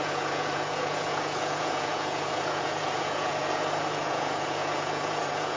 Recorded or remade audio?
remade